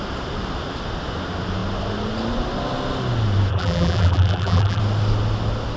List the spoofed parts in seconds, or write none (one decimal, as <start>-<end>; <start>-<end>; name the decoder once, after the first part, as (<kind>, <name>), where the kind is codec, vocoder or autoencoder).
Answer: 3.5-4.8 (vocoder, BigVGAN v2)